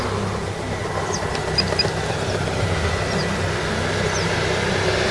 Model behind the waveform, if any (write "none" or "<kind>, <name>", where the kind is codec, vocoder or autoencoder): none